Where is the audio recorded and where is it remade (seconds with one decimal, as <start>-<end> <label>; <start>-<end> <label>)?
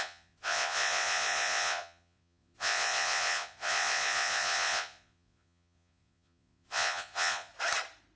0.0-7.5 remade; 7.5-8.2 recorded